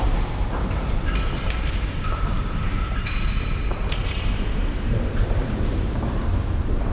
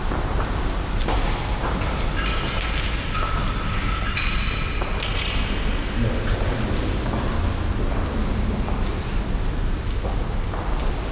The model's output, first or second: first